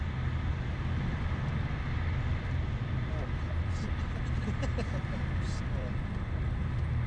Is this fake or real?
real